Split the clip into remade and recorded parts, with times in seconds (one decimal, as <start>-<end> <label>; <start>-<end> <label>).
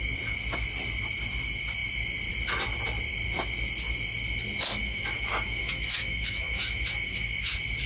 0.0-4.8 recorded; 4.8-7.5 remade; 7.5-7.9 recorded